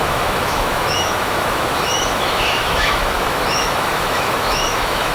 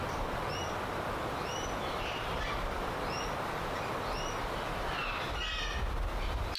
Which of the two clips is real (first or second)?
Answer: second